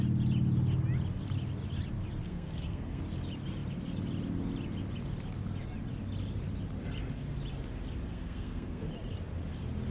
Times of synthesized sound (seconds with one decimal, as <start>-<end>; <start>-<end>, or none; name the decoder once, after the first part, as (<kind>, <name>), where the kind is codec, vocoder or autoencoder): 2.2-3.0 (codec, SNAC); 8.1-8.9